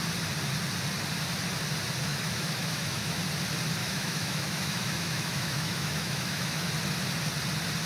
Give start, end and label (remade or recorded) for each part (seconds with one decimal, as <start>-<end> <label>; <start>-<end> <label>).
0.0-2.1 recorded; 2.1-3.2 remade; 3.2-3.8 recorded; 3.8-6.7 remade; 6.7-7.9 recorded